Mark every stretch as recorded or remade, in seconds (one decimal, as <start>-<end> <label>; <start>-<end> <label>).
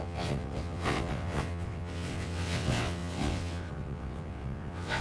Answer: 0.0-5.0 remade